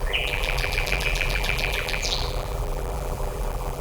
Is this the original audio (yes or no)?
no